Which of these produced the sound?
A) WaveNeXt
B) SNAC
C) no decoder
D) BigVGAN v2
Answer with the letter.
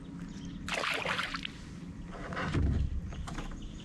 C